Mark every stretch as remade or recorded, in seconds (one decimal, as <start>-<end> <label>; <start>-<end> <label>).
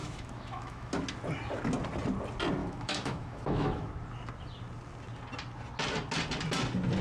0.0-0.9 remade; 0.9-2.6 recorded; 2.6-3.9 remade; 3.9-7.0 recorded